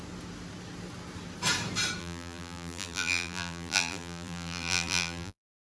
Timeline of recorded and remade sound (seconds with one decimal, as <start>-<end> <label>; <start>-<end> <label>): 0.0-2.0 recorded; 2.0-5.7 remade